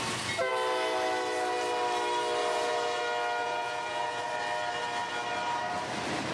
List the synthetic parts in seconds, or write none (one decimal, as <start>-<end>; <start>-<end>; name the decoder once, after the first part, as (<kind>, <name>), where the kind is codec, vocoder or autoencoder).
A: 2.4-3.0 (vocoder, Vocos); 3.4-4.3